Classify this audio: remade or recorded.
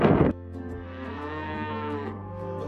remade